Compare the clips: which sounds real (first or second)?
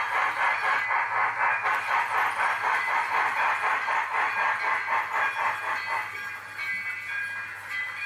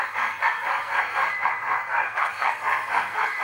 first